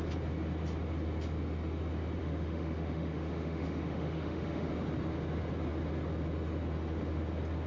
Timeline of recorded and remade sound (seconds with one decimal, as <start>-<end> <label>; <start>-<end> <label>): 0.0-2.2 recorded; 2.2-4.7 remade; 4.7-7.7 recorded